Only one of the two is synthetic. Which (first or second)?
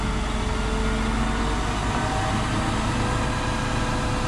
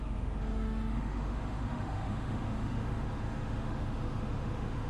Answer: second